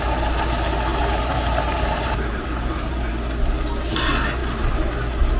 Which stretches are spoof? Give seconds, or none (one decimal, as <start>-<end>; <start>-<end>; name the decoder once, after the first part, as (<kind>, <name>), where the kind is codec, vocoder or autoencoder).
0.9-3.1 (vocoder, BigVGAN v2); 4.4-4.9